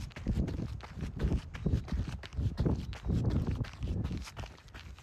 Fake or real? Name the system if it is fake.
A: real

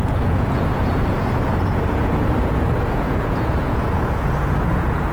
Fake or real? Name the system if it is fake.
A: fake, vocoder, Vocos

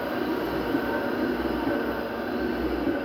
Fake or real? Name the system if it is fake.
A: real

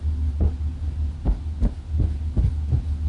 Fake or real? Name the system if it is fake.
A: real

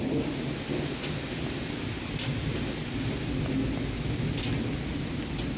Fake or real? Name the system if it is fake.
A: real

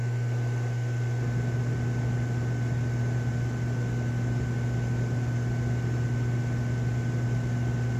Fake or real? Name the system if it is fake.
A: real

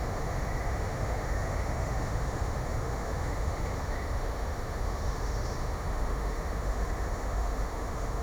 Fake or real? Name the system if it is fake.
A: fake, autoencoder, DAC-VAE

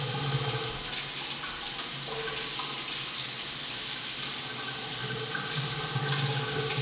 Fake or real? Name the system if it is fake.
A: real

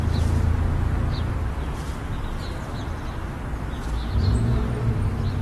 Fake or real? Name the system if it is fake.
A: real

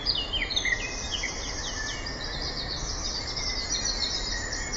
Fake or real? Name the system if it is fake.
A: real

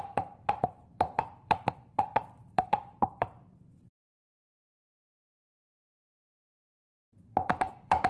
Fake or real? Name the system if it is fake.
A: fake, vocoder, BigVGAN v2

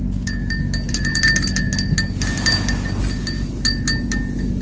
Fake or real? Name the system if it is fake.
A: real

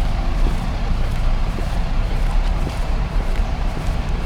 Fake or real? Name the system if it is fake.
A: fake, vocoder, BigVGAN v2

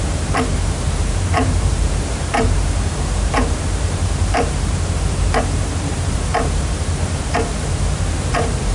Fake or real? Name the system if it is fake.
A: fake, vocoder, BigVGAN v2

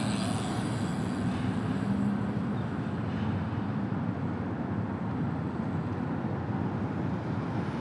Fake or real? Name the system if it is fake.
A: real